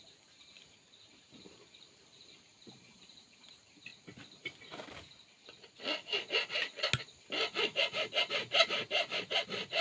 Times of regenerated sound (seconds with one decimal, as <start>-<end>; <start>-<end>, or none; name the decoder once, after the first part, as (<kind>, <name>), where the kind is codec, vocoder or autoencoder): 0.0-3.9 (vocoder, BigVGAN v2); 8.3-9.8